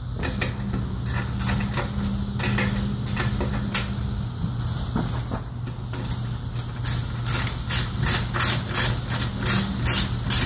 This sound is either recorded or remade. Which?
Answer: recorded